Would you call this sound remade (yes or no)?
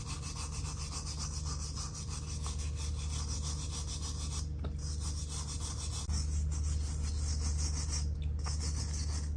no